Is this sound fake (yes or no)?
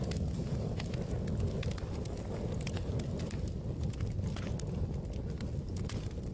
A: no